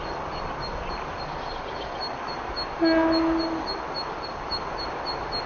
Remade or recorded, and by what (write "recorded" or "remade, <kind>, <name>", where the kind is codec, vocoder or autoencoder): recorded